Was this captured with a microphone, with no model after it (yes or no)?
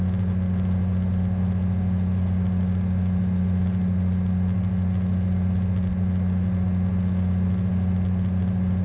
yes